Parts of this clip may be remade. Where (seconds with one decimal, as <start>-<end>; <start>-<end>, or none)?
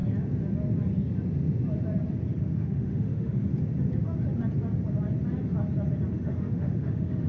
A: 2.4-3.5; 6.1-7.3